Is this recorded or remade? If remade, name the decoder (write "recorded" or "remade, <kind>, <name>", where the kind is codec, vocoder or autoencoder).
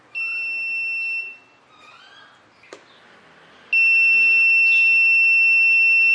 recorded